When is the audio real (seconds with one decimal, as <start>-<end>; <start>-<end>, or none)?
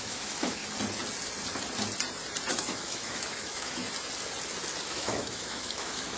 0.6-2.5; 3.8-4.8